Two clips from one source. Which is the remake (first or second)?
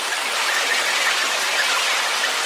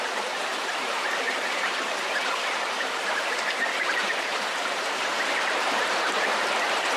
second